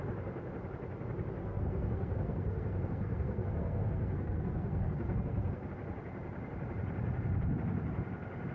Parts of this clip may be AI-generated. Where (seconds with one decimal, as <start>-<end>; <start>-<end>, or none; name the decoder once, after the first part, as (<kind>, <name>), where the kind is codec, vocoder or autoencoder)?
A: 1.4-5.7 (codec, SNAC)